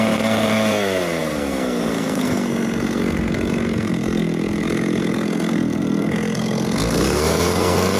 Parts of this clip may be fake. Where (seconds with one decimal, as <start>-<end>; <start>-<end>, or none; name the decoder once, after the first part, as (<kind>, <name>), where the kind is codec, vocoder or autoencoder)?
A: 0.0-8.0 (codec, SNAC)

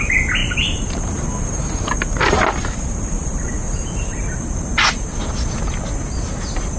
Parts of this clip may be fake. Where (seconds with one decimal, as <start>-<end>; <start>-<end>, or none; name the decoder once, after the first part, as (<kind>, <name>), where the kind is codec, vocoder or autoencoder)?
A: 0.4-2.5 (vocoder, BigVGAN v2); 3.2-5.4